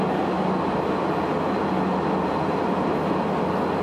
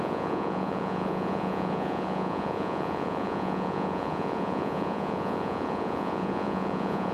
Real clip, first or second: first